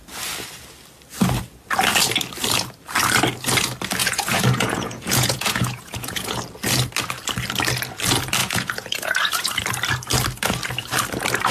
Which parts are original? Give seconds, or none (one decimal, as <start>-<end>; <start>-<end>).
0.0-4.0; 6.4-8.4; 9.6-11.5

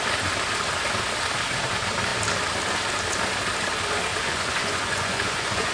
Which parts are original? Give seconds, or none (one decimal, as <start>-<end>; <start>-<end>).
0.0-4.1

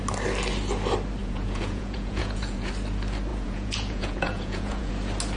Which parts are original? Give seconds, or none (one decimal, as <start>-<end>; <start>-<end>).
0.0-1.2; 2.7-3.3; 4.9-5.4

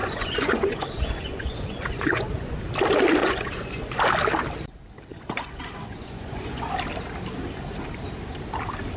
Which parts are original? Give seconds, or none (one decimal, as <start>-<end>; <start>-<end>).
2.6-3.2; 4.0-5.1; 6.7-9.0

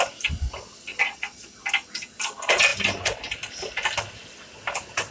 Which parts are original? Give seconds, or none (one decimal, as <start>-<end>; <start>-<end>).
0.0-0.9; 1.5-5.1

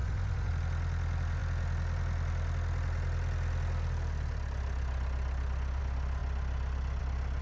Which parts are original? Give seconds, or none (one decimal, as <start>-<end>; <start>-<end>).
0.5-7.4